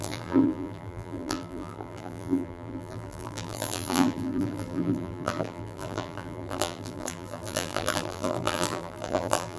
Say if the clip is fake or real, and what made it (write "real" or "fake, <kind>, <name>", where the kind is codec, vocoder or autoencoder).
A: fake, vocoder, BigVGAN v2